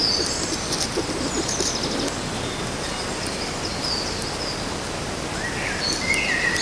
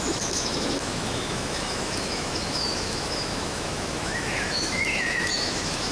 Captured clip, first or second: first